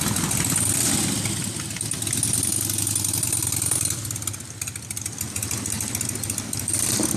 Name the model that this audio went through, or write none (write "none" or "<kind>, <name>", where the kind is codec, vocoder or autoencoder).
none